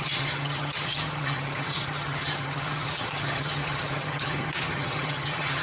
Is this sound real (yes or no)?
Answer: no